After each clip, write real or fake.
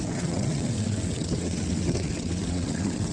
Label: fake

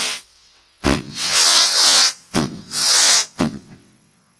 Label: fake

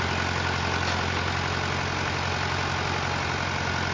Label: real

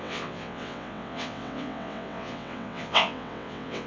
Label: fake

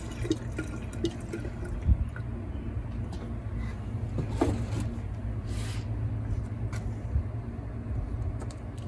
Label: real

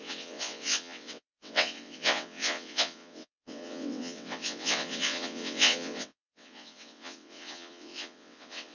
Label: fake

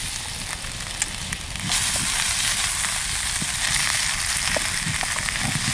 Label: real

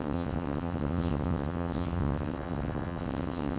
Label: fake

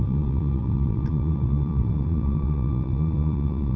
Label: fake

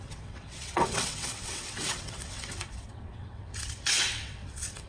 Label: fake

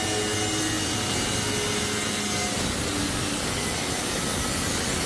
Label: real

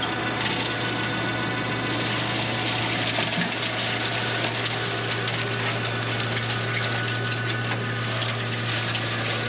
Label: real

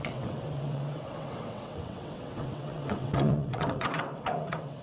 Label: fake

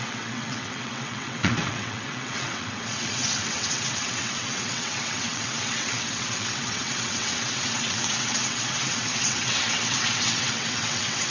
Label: fake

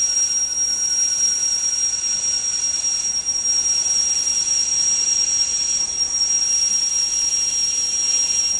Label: real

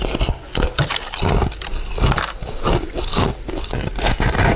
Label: real